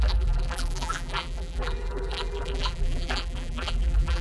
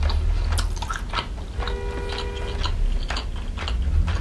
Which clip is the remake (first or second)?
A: first